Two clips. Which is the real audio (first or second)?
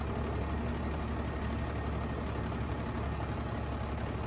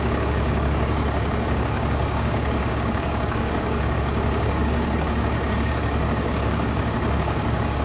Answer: first